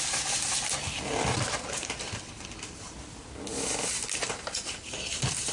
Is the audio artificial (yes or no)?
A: no